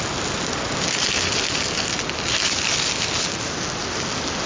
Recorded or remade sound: recorded